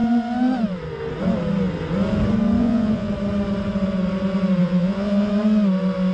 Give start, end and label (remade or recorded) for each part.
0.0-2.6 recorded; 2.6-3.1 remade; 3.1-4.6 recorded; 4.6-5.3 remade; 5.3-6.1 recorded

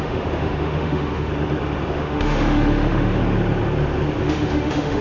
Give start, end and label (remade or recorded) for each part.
0.0-1.3 remade; 1.3-1.9 recorded; 1.9-3.2 remade; 3.2-4.2 recorded; 4.2-5.0 remade